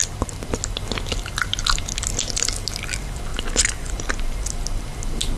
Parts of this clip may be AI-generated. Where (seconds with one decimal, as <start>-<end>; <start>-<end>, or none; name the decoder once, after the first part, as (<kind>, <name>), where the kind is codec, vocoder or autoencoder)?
3.3-3.9 (vocoder, Vocos)